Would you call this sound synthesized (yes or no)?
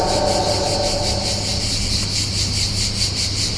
no